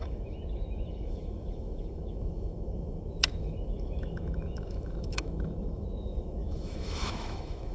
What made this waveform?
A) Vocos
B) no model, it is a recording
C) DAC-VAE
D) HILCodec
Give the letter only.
C